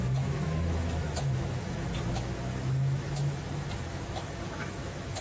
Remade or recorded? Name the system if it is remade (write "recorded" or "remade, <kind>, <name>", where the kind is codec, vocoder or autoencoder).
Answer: remade, autoencoder, DAC-VAE